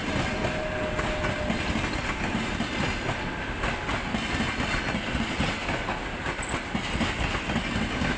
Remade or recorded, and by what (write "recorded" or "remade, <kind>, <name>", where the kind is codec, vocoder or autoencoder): recorded